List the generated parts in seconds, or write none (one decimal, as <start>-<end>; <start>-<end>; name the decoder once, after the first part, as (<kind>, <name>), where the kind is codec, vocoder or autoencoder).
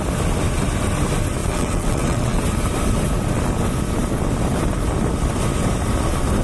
1.4-2.4 (vocoder, WaveNeXt)